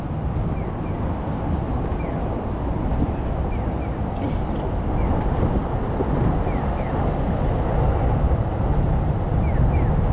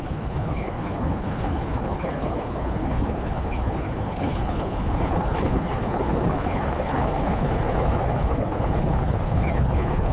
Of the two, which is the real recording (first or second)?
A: first